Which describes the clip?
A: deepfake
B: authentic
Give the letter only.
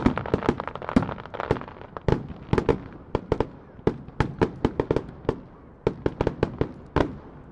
B